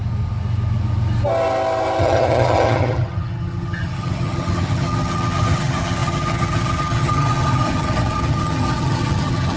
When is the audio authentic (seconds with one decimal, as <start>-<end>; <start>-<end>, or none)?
0.0-2.0